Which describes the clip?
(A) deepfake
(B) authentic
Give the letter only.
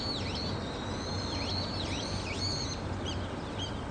B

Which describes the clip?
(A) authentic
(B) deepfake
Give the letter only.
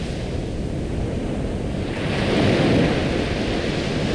A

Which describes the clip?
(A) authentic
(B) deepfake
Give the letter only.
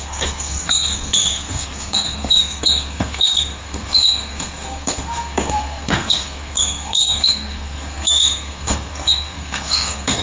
B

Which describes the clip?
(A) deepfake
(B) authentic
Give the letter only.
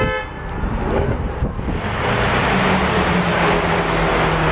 B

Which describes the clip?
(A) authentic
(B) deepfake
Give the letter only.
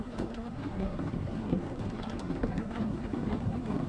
B